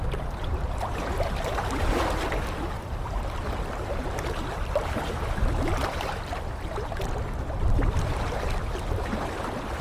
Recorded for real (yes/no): yes